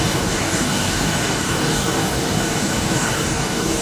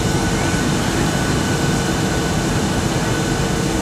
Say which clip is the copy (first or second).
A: first